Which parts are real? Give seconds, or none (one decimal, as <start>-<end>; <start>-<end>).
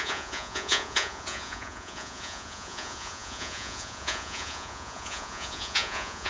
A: none